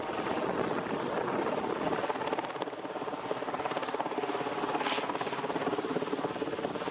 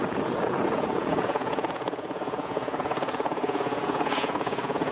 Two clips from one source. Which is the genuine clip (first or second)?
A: first